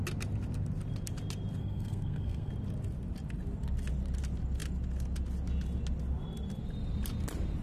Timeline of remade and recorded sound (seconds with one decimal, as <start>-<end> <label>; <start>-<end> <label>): 0.0-1.6 recorded; 1.6-2.5 remade; 2.5-7.6 recorded